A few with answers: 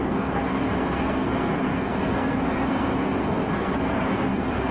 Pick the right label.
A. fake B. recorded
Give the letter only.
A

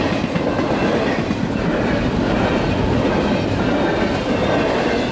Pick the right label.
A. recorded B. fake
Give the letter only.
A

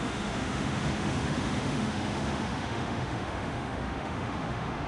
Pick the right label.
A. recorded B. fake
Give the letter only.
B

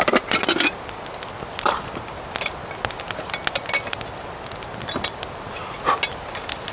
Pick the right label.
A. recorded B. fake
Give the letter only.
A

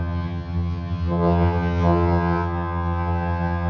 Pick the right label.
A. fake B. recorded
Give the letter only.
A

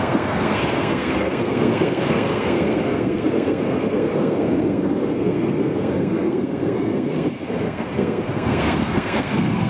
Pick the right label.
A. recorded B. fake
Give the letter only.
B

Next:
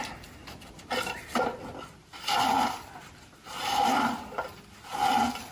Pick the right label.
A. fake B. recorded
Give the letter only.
B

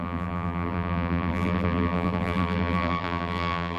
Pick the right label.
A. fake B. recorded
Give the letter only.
A